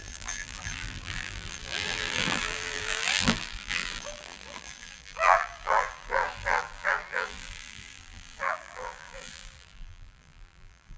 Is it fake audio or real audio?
fake